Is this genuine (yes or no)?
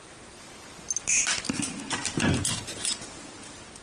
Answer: yes